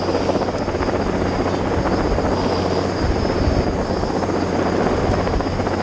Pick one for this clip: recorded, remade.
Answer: recorded